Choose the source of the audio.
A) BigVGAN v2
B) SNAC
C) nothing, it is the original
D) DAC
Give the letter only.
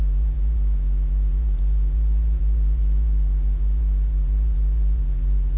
A